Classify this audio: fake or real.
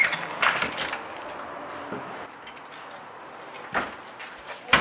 real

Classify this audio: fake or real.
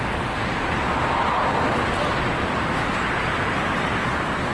real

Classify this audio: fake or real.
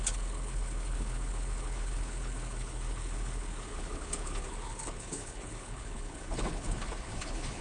fake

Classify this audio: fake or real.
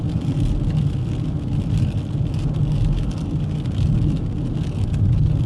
real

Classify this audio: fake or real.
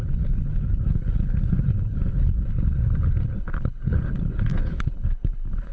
fake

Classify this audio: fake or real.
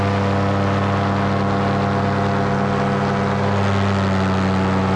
real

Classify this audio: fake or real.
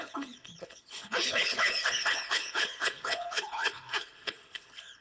fake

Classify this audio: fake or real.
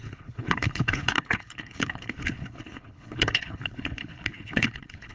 fake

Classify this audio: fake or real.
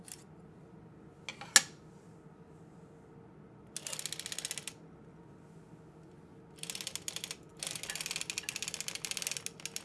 real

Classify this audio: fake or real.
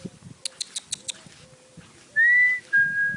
real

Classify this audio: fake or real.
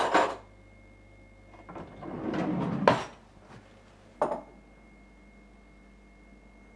real